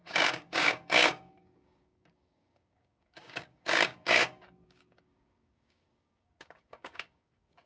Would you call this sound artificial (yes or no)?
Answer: yes